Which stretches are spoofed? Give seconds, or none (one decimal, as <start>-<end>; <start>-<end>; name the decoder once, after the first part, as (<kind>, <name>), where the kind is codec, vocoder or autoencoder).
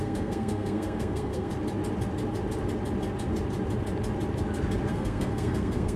0.0-1.5 (codec, SNAC); 4.9-6.0